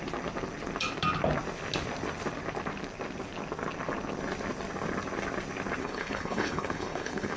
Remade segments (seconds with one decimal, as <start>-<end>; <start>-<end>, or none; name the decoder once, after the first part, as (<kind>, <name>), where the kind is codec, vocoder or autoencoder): 5.8-7.4 (codec, HILCodec)